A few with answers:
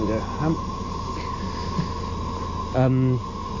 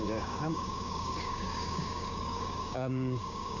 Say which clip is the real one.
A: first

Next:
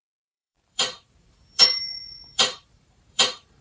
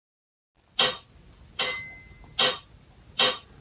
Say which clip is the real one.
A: second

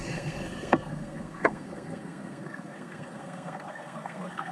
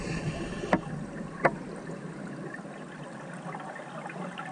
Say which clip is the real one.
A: second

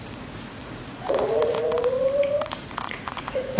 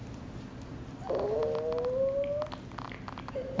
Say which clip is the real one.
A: second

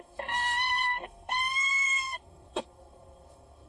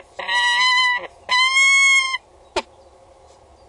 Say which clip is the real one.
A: second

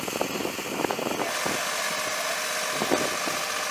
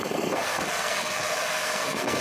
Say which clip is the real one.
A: first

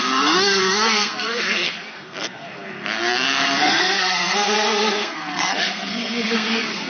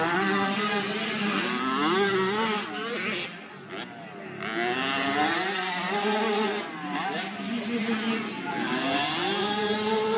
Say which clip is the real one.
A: second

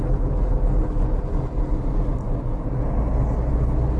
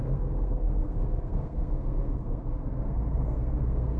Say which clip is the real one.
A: first